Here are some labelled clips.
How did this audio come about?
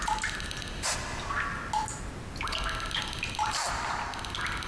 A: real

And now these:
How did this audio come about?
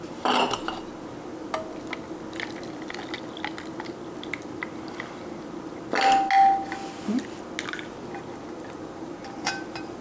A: real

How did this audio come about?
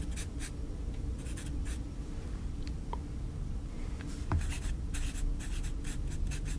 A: real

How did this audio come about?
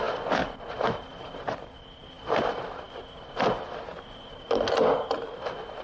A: real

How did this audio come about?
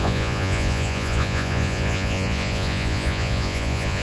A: fake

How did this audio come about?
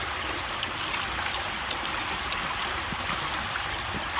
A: real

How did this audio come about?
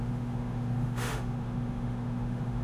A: fake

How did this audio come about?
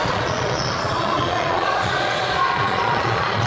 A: fake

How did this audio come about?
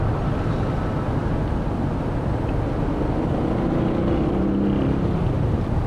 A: real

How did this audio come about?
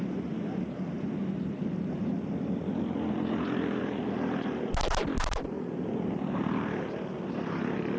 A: real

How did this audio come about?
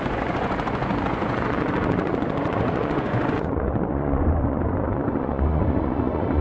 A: fake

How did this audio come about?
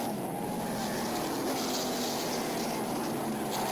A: real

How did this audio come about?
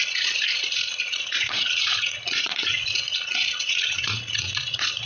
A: fake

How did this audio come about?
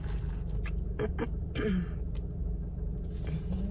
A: real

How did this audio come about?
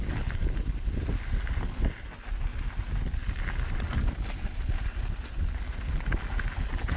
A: real